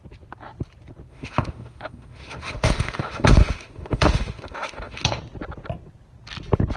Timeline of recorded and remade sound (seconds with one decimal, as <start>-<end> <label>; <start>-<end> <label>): 0.0-1.1 recorded; 1.1-5.2 remade; 5.2-6.8 recorded